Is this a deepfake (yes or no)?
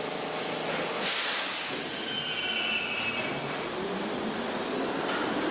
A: no